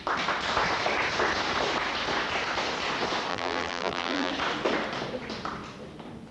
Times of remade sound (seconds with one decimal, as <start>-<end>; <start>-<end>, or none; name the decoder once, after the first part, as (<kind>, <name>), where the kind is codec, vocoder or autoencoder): 3.3-4.3 (vocoder, BigVGAN v2)